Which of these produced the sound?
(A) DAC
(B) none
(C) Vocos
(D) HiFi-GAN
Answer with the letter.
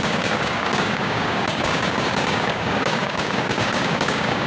A